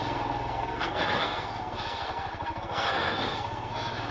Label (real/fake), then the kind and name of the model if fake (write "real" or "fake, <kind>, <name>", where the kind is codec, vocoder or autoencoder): fake, codec, SNAC